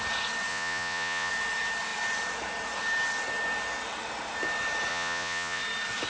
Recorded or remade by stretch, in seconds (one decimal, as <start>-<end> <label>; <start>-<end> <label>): 0.0-0.5 recorded; 0.5-1.3 remade; 1.3-4.9 recorded; 4.9-5.6 remade; 5.6-6.1 recorded